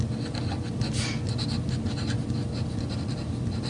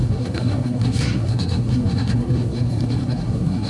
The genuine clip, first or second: first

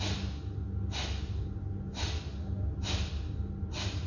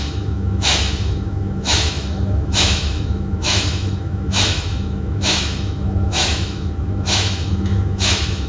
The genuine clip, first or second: first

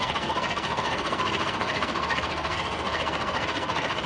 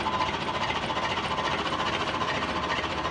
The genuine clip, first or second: second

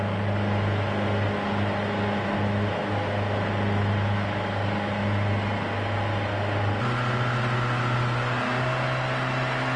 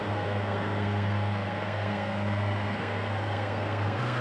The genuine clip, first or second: first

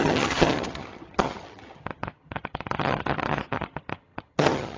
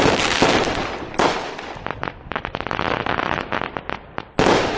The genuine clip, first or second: second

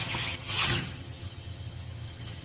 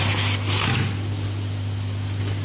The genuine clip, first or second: second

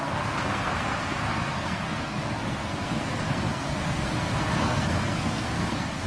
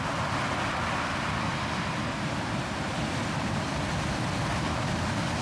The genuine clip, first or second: second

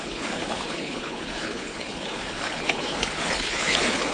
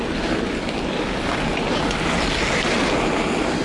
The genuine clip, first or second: second